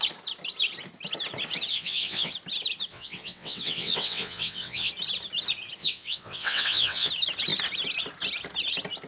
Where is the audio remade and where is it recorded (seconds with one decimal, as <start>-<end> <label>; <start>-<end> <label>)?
0.0-1.7 recorded; 1.7-2.3 remade; 2.3-2.9 recorded; 2.9-4.9 remade; 4.9-5.8 recorded; 5.8-7.1 remade; 7.1-9.1 recorded